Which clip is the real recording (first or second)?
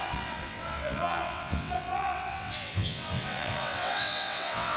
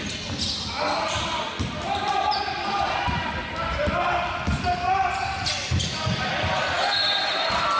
second